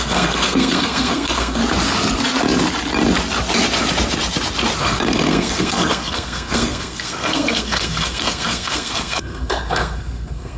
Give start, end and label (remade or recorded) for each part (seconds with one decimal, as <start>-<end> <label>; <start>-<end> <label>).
0.0-1.6 remade; 1.6-4.8 recorded; 4.8-10.6 remade